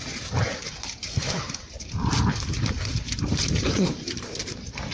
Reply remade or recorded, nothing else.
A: remade